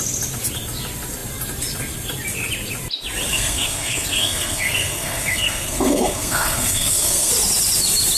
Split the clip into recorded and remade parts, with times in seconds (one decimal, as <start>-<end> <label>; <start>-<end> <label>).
0.0-3.3 recorded; 3.3-7.3 remade; 7.3-8.2 recorded